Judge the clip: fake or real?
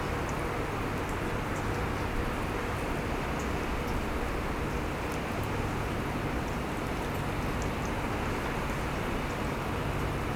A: real